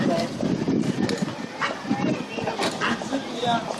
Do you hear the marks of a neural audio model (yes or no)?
no